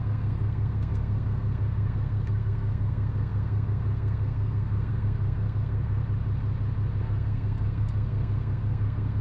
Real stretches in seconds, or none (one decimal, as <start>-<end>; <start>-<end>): 6.0-7.0